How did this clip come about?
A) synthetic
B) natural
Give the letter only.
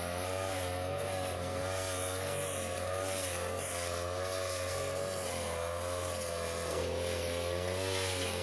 A